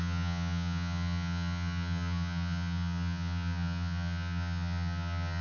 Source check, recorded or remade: remade